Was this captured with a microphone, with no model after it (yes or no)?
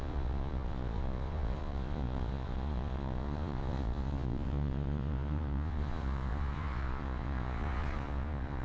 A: no